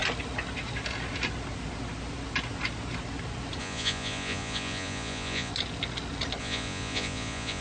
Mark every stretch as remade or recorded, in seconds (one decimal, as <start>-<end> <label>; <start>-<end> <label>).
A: 0.0-3.6 recorded; 3.6-5.5 remade; 5.5-6.4 recorded; 6.4-7.6 remade